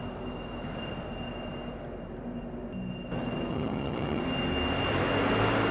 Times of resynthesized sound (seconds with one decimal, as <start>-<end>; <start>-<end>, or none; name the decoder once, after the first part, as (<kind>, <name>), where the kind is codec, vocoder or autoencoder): 3.5-4.2 (vocoder, HiFi-GAN)